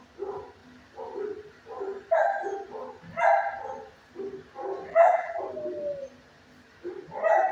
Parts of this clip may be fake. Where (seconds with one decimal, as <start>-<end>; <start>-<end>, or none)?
4.9-5.4